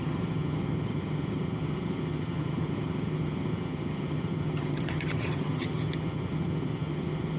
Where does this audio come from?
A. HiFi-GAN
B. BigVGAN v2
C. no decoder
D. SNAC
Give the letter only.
A